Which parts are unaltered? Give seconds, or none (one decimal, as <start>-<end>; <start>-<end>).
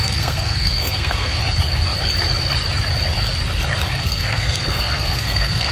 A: 1.4-3.9